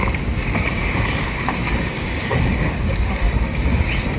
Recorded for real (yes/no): no